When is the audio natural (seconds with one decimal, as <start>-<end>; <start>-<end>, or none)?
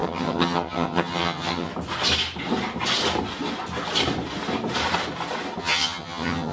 1.7-5.6